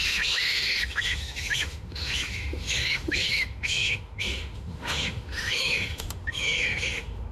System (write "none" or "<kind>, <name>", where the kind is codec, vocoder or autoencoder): autoencoder, DAC-VAE